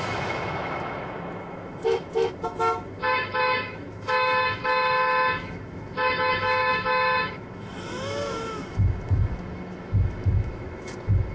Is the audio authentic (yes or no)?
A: no